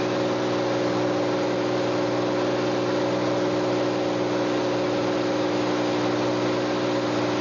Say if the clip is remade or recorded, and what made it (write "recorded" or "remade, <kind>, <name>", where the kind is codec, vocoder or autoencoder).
recorded